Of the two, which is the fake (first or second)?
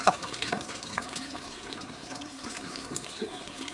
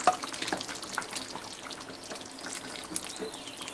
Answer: first